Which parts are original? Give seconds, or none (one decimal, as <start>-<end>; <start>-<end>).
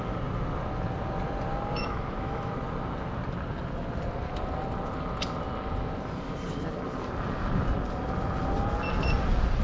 0.0-1.8; 2.5-9.6